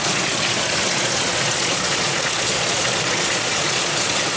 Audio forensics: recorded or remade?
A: remade